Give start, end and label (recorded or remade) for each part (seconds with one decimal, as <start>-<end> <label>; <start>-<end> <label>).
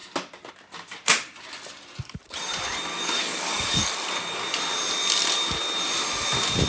0.0-2.9 recorded; 2.9-3.9 remade; 3.9-6.7 recorded